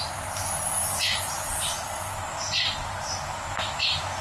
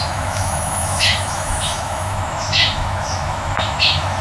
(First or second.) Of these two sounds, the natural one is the first